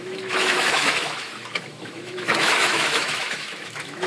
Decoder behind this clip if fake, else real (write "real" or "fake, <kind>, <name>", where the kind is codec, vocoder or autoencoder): fake, autoencoder, DAC-VAE